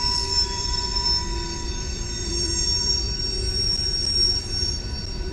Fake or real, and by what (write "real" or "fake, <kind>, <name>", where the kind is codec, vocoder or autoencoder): fake, vocoder, BigVGAN v2